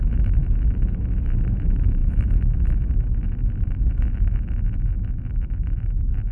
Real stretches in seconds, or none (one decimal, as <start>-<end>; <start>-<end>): 0.4-1.4